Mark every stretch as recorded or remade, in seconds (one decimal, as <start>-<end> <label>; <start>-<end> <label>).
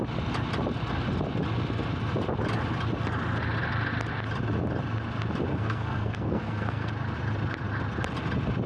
0.0-5.5 recorded; 5.5-6.9 remade; 6.9-8.7 recorded